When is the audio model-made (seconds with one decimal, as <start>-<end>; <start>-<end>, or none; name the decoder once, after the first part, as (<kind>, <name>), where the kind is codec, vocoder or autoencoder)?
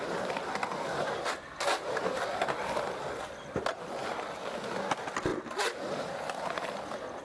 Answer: none